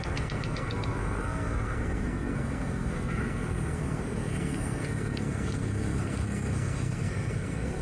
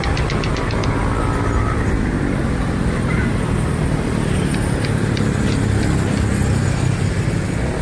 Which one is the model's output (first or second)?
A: first